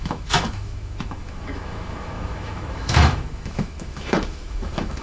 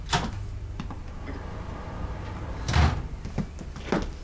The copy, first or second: first